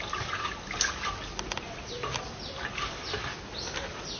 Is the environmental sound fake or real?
real